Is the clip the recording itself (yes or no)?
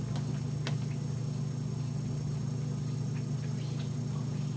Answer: yes